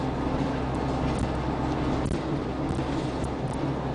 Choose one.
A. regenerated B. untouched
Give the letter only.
B